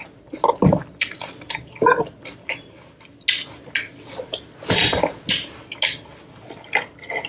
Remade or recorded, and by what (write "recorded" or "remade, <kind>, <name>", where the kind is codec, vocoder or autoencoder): recorded